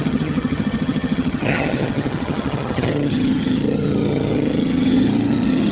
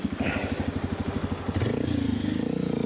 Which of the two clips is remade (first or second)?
first